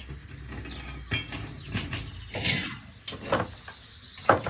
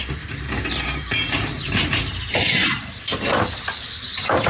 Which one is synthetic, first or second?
second